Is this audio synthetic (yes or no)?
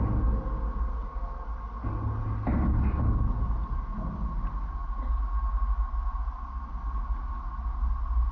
no